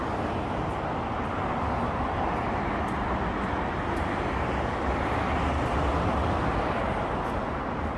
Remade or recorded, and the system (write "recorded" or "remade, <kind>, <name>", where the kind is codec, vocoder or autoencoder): recorded